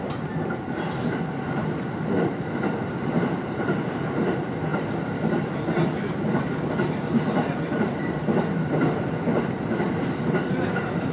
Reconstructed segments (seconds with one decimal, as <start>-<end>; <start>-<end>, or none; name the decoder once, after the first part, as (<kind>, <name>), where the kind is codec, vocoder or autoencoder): 0.0-11.1 (vocoder, BigVGAN v2)